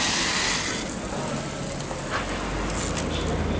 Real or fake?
real